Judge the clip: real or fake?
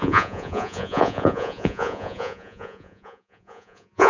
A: fake